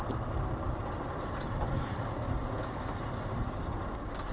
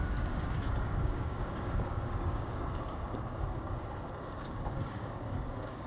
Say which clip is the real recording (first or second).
first